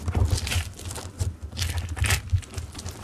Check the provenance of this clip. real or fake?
real